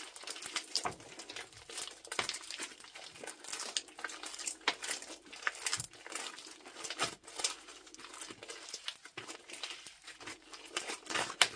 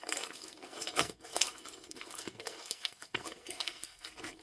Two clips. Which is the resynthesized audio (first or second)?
second